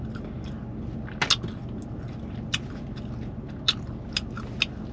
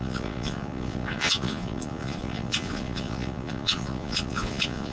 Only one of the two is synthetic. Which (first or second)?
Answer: second